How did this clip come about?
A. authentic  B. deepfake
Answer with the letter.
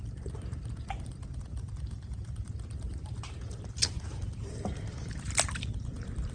B